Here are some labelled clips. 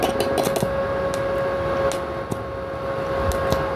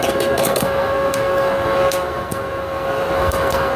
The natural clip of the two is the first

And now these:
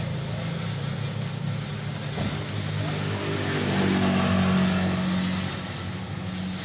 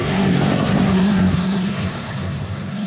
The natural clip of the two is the first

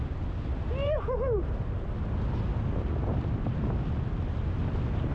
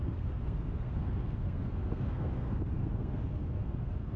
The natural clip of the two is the first